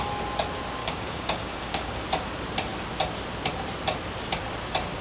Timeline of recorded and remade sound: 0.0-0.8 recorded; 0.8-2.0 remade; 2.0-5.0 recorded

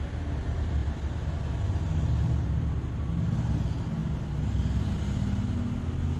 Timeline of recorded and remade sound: 0.0-6.2 recorded